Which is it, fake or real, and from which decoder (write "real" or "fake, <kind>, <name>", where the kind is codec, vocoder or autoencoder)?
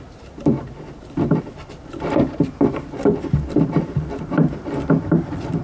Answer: fake, vocoder, BigVGAN v2